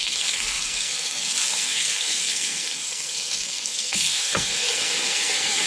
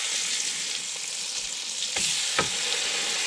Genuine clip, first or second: second